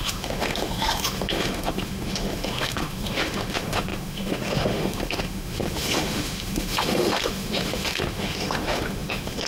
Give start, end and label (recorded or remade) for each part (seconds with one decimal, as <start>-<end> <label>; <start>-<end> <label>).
0.0-9.5 remade